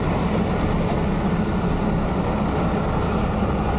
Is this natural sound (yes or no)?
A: yes